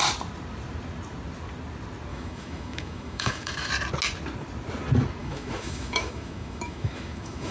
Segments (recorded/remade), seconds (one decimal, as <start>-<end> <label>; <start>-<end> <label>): 0.0-2.1 recorded; 2.1-3.7 remade; 3.7-5.2 recorded; 5.2-7.5 remade